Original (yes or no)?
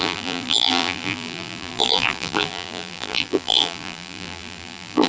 no